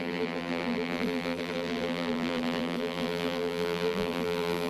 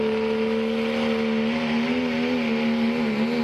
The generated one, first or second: first